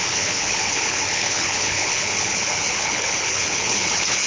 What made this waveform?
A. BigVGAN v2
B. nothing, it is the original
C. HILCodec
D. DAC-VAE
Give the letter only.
C